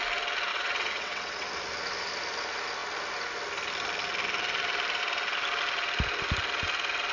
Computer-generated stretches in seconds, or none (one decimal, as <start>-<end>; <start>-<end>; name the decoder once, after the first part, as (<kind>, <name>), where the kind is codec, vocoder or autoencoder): 0.5-1.5 (vocoder, WaveNeXt)